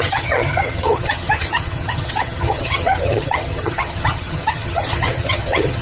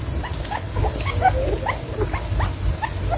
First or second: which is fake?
first